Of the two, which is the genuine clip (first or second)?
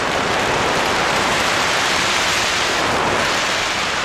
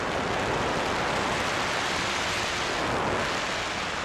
second